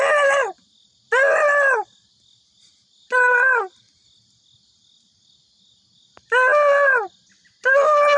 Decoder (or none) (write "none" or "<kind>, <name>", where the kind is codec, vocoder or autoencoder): none